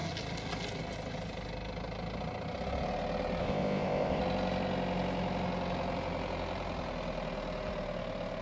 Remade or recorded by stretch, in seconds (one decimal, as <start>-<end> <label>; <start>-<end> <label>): 0.0-3.4 recorded; 3.4-4.2 remade; 4.2-8.4 recorded